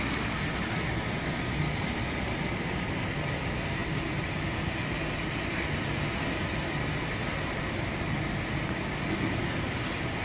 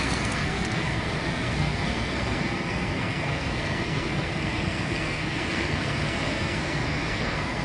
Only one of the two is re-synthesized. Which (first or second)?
second